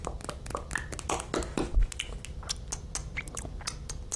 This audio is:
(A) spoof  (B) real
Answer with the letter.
B